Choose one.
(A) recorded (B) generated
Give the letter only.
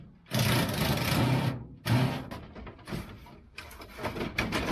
A